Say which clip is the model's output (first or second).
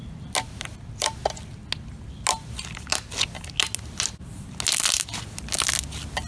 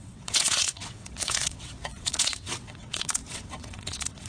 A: second